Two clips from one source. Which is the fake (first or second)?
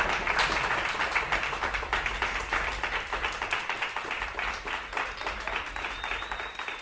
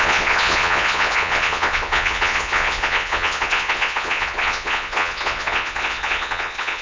second